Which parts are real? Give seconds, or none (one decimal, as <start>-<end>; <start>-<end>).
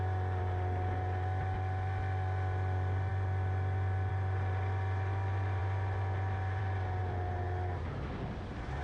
0.0-8.8